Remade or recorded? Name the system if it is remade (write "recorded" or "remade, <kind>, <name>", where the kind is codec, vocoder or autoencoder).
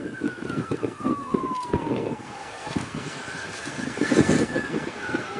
remade, codec, SNAC